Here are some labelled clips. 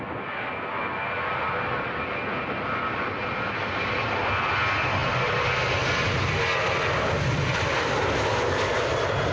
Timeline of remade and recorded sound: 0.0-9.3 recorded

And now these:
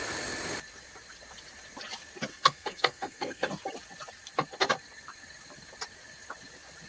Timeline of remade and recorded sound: 0.0-2.3 recorded; 2.3-3.5 remade; 3.5-6.9 recorded

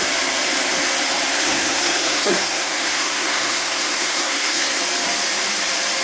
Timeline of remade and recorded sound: 0.0-1.3 recorded; 1.3-4.8 remade; 4.8-6.0 recorded